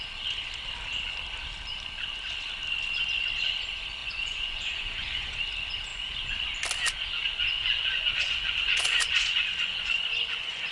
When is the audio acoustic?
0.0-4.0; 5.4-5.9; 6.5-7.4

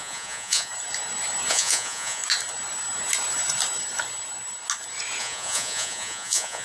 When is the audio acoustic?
0.7-1.5; 2.2-5.2